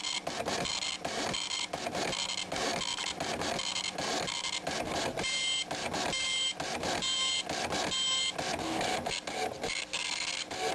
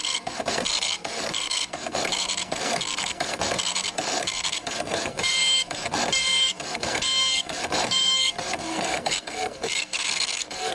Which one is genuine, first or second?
first